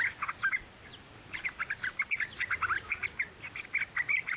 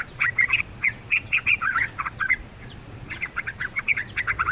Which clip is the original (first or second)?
first